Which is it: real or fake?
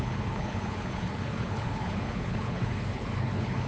fake